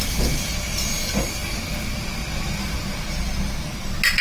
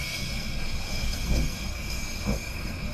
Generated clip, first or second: second